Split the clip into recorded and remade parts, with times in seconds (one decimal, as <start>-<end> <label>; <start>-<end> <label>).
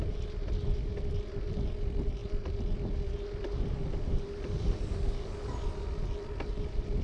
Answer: 0.0-7.0 recorded